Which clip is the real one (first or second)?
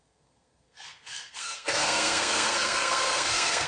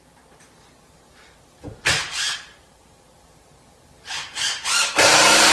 second